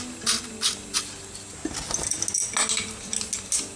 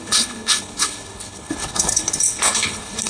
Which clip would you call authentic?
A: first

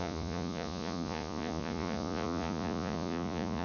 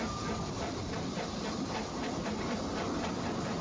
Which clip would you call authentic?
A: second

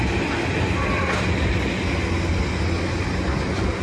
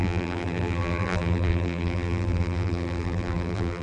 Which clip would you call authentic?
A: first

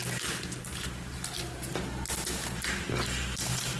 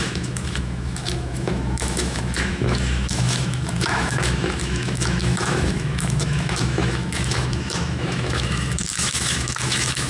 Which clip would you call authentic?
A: first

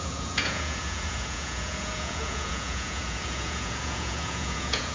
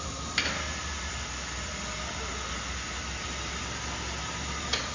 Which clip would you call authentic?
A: second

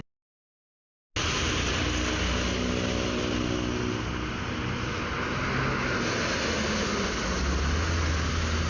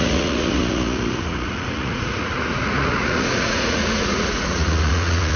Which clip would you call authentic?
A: first